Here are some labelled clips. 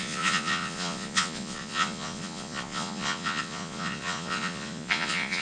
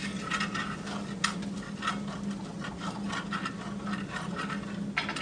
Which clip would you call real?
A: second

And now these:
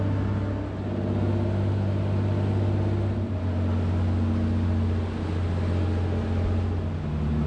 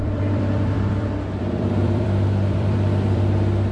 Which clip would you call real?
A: first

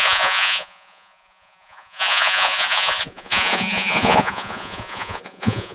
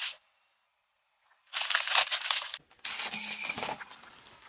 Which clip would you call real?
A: second